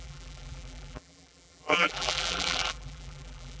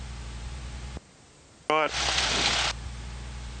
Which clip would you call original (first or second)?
second